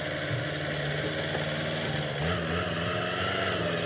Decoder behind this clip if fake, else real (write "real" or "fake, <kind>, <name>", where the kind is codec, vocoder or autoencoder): real